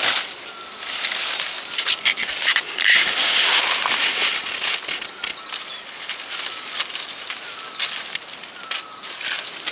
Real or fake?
real